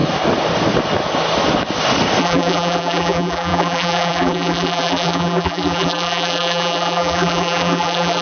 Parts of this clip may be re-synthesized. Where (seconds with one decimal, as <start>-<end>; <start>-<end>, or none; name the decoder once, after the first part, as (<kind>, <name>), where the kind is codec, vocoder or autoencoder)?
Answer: 2.2-8.2 (vocoder, BigVGAN v2)